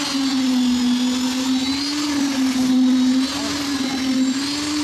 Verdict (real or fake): real